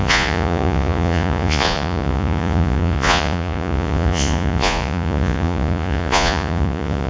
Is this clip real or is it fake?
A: fake